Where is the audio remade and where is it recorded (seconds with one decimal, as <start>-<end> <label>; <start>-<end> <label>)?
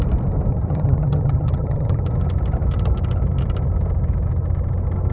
0.0-0.5 recorded; 0.5-2.0 remade; 2.0-5.1 recorded